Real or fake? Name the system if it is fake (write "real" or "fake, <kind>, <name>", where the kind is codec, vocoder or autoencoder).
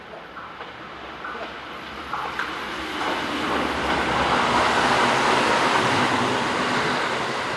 real